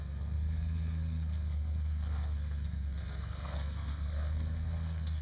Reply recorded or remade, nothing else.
remade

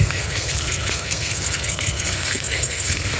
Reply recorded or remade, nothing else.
remade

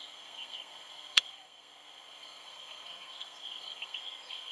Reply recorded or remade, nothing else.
remade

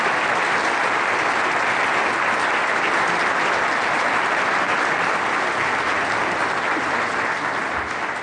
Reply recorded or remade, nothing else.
recorded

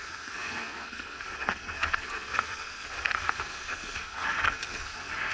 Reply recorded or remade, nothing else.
remade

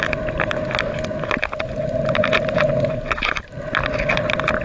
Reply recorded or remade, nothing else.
recorded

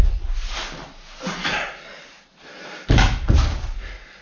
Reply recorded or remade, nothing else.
recorded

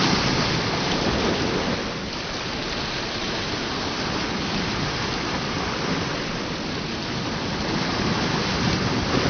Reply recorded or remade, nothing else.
recorded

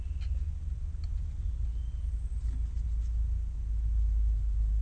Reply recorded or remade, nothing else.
recorded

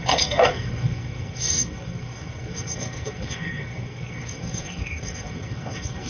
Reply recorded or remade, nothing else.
remade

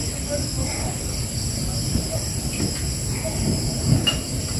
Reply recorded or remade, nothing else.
recorded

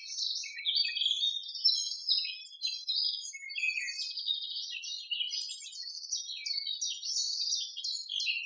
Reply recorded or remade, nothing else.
recorded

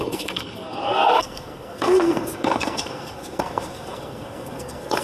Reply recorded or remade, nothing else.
remade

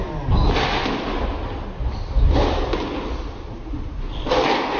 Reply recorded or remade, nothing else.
recorded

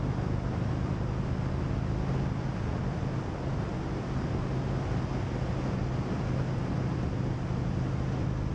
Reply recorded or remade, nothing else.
recorded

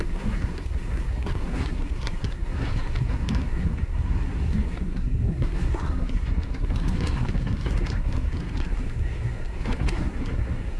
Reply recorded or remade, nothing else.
remade